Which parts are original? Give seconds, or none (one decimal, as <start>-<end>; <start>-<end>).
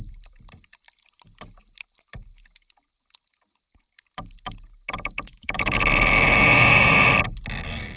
0.0-5.3; 5.8-8.0